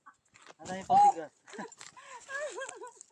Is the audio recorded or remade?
recorded